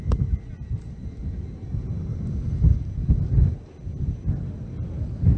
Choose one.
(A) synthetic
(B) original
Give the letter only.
B